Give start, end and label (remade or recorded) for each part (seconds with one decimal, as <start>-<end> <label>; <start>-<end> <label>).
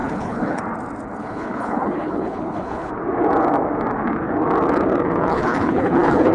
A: 0.0-0.6 remade; 0.6-1.2 recorded; 1.2-2.9 remade; 2.9-5.3 recorded; 5.3-6.3 remade